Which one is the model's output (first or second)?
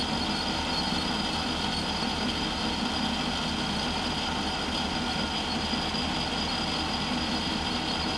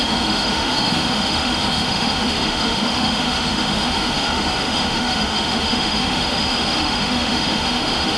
second